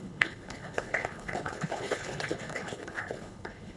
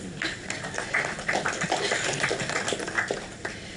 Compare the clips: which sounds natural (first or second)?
second